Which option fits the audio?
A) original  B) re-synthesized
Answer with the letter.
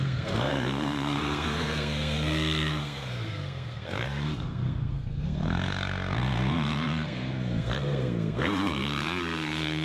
B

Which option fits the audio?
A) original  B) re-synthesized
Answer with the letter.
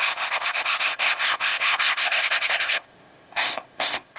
B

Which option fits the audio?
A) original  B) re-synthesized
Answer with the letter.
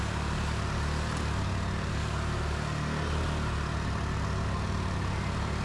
A